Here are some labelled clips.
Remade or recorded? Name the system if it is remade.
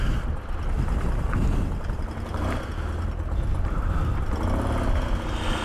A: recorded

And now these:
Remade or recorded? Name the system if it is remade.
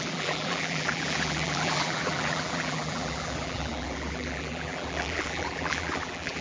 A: remade, vocoder, BigVGAN v2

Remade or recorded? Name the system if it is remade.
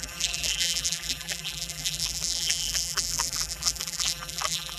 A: remade, vocoder, BigVGAN v2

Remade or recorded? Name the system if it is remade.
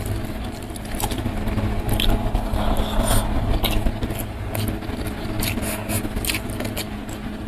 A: recorded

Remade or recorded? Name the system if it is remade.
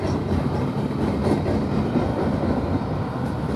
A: remade, vocoder, BigVGAN v2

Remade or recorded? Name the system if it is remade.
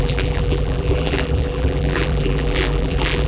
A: remade, vocoder, BigVGAN v2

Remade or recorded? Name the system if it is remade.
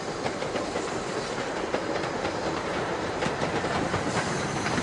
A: remade, vocoder, BigVGAN v2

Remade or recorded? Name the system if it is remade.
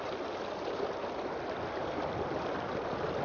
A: recorded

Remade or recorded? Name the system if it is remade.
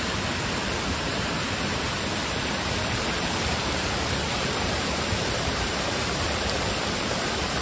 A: remade, vocoder, BigVGAN v2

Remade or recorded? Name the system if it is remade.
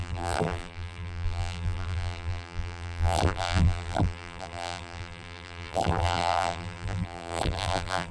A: remade, vocoder, BigVGAN v2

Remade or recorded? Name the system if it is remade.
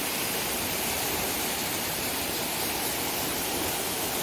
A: remade, vocoder, BigVGAN v2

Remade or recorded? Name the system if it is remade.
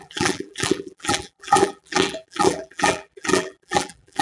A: remade, vocoder, BigVGAN v2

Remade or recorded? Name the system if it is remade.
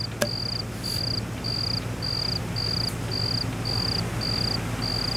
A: recorded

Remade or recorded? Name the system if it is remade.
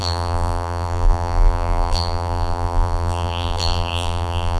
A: remade, vocoder, BigVGAN v2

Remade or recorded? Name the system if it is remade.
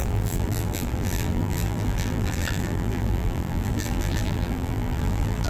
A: remade, vocoder, BigVGAN v2